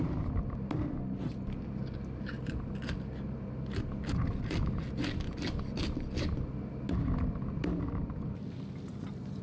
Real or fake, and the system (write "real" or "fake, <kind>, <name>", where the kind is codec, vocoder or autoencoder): real